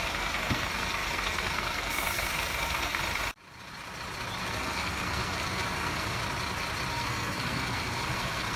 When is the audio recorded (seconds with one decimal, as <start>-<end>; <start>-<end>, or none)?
3.0-4.4; 6.2-6.9